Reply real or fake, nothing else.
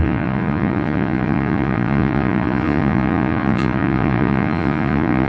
fake